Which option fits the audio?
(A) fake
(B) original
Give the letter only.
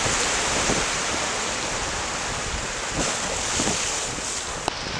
B